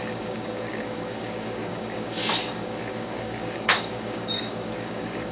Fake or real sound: fake